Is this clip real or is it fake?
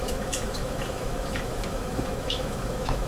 fake